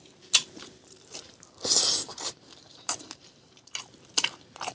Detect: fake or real fake